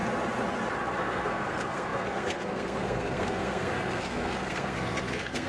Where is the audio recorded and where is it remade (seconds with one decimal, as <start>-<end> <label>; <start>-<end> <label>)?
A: 0.0-1.0 recorded; 1.0-5.5 remade